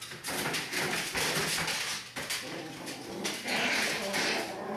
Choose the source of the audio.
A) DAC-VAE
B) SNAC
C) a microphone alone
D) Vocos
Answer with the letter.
C